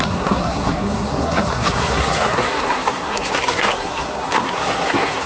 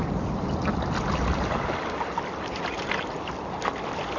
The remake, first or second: first